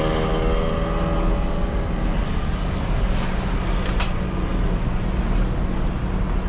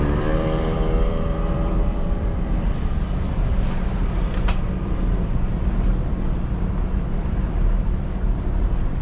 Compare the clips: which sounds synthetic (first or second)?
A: second